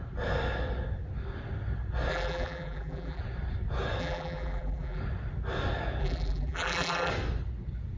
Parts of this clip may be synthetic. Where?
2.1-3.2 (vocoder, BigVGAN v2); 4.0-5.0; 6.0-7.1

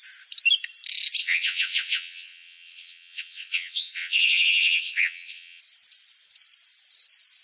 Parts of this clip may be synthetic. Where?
1.2-5.6 (vocoder, WaveNeXt)

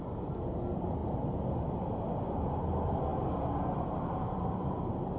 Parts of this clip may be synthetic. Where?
none

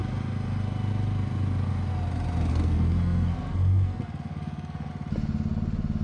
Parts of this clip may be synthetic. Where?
2.5-4.9 (codec, SNAC)